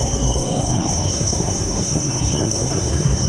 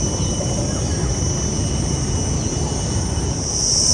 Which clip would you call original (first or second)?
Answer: second